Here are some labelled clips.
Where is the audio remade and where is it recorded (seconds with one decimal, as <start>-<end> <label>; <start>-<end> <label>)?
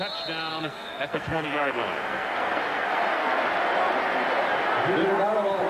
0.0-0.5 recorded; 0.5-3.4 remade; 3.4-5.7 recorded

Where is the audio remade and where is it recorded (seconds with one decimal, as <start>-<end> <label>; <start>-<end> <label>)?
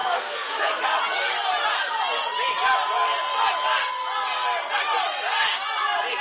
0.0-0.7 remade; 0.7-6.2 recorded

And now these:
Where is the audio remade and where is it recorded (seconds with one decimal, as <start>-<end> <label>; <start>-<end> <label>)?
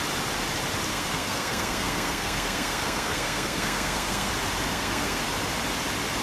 0.0-0.9 recorded; 0.9-4.3 remade; 4.3-4.7 recorded; 4.7-5.2 remade; 5.2-6.2 recorded